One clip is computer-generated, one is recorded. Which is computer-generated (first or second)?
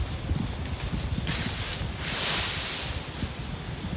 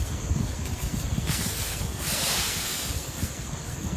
second